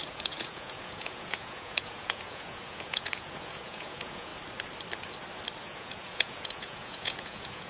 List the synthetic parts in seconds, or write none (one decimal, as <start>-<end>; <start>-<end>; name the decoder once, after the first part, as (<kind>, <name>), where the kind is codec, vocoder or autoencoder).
0.0-4.3 (vocoder, Vocos); 5.6-7.7